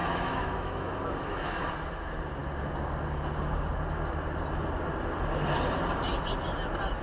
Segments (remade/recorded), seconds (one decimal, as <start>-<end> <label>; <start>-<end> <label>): 0.0-1.7 remade; 1.7-7.0 recorded